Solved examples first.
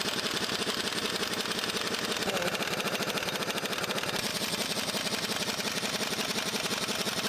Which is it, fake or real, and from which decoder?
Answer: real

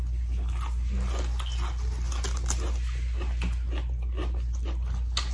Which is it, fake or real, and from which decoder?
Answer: real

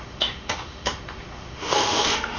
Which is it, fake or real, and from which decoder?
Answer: fake, autoencoder, DAC-VAE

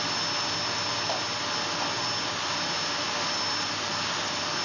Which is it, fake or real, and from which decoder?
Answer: real